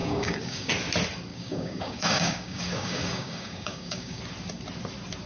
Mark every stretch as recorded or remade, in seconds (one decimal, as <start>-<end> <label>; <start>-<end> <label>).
0.0-0.7 remade; 0.7-1.3 recorded; 1.3-4.2 remade; 4.2-5.3 recorded